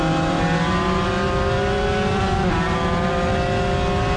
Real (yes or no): yes